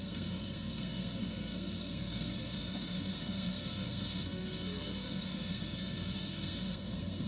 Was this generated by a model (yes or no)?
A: yes